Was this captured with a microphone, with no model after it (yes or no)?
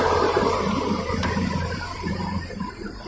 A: no